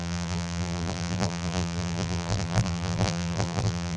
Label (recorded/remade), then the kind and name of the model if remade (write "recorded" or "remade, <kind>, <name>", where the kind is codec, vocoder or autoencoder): remade, vocoder, BigVGAN v2